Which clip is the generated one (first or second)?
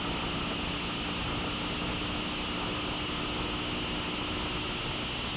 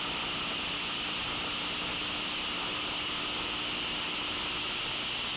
second